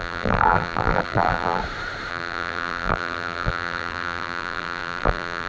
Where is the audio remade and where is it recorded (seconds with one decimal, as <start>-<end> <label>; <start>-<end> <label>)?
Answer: 0.0-1.6 remade; 1.6-2.1 recorded; 2.1-5.5 remade